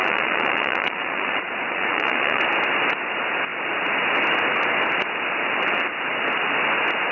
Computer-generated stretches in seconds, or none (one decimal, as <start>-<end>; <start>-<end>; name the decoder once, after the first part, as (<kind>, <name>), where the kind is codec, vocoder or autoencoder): 0.0-2.4 (vocoder, Vocos)